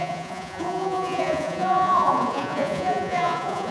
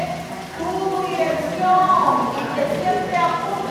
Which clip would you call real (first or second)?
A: second